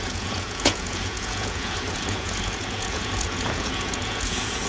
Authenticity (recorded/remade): remade